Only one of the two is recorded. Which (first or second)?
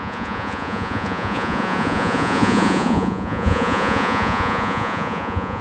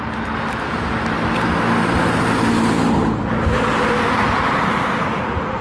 second